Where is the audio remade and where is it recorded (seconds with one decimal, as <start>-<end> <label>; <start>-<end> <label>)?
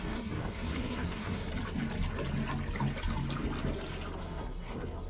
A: 0.0-1.5 remade; 1.5-4.2 recorded; 4.2-5.1 remade